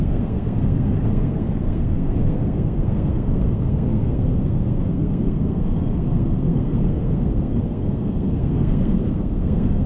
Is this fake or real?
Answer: fake